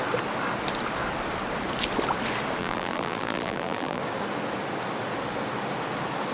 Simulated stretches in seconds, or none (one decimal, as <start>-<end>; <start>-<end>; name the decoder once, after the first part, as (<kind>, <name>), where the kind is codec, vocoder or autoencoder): 2.6-4.0 (vocoder, BigVGAN v2)